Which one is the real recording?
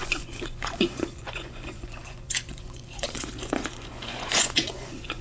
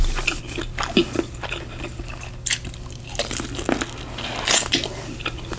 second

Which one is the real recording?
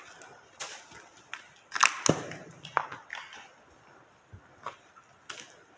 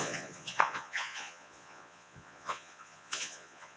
first